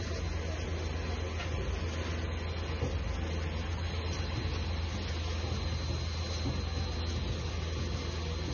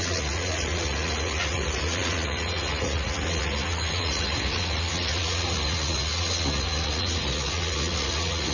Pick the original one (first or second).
first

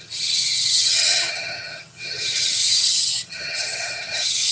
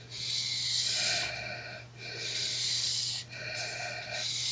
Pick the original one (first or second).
second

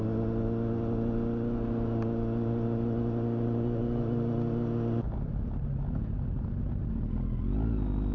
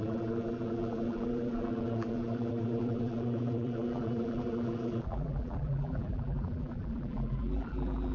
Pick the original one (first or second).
first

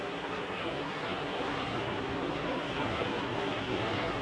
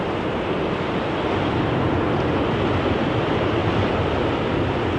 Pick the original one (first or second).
second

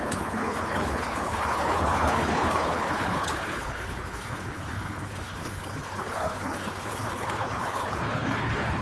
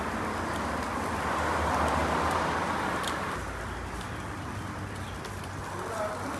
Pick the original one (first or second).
second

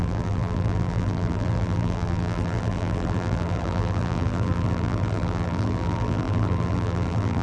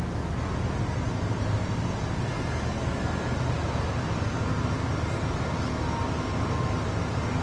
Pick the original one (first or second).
second